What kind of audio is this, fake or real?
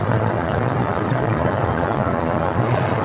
fake